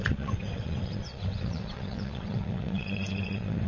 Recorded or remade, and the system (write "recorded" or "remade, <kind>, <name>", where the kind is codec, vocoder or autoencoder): remade, vocoder, WaveNeXt